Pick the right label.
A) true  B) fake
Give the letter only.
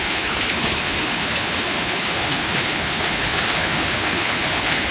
B